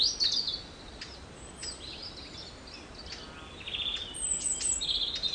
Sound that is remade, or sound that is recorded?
recorded